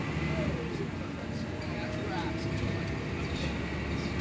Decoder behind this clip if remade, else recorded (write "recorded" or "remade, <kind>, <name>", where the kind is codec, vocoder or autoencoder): recorded